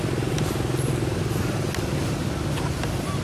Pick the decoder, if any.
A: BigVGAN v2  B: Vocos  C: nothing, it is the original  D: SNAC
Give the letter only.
C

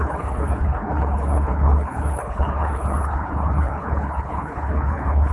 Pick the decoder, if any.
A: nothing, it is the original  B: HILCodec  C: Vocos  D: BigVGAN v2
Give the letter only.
B